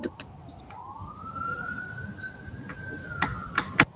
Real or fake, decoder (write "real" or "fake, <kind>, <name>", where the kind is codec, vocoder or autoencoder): real